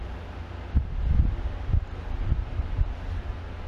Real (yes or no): yes